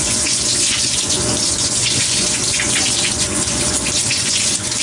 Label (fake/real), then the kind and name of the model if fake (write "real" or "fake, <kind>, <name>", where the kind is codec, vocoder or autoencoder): fake, vocoder, Vocos